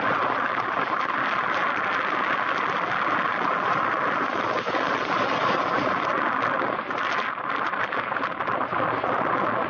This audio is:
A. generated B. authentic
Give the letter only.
B